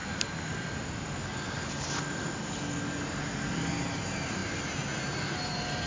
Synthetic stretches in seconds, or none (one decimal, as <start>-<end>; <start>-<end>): 3.5-5.9